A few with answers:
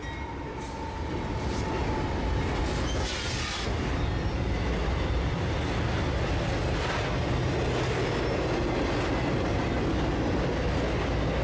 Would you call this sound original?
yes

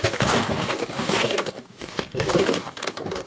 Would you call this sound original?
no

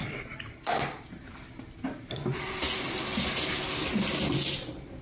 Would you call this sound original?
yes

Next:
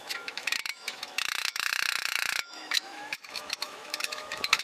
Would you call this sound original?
no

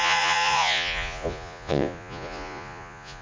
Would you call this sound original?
no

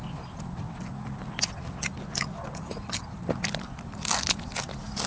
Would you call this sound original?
yes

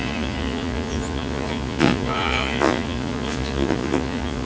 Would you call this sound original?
no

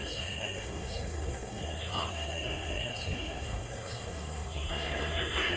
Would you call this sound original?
no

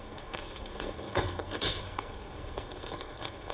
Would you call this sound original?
no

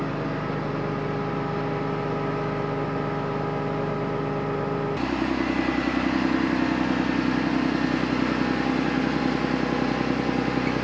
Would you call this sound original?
yes